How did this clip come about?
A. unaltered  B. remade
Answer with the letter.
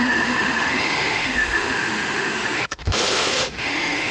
B